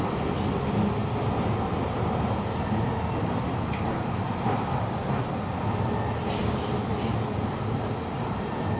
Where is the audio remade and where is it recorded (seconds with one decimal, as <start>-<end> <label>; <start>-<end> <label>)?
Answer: 0.0-8.8 recorded